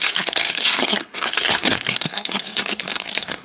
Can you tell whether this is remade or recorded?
remade